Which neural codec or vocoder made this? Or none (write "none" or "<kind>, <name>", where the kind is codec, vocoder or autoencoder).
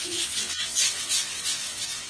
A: vocoder, WaveNeXt